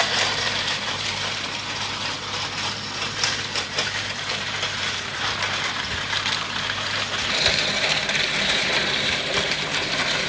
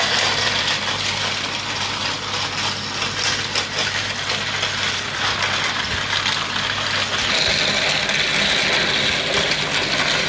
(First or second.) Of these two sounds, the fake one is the first